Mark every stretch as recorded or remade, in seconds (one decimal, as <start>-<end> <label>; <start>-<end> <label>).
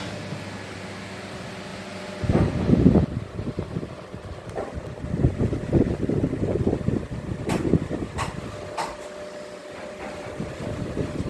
0.0-1.7 recorded; 1.7-6.0 remade; 6.0-9.6 recorded; 9.6-11.3 remade